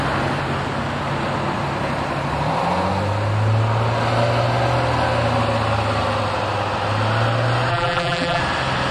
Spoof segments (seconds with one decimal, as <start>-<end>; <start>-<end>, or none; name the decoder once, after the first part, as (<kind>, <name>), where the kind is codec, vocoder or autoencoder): 7.7-8.4 (vocoder, BigVGAN v2)